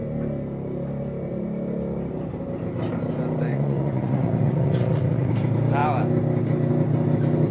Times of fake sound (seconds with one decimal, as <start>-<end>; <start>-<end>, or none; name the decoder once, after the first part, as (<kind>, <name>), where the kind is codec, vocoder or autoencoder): 3.5-5.3 (vocoder, Vocos)